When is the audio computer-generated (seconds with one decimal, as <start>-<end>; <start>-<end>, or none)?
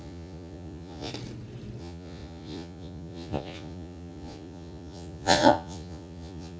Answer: 0.0-1.1; 1.8-6.6